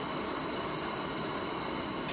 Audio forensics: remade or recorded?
recorded